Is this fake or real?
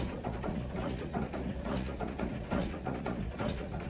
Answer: fake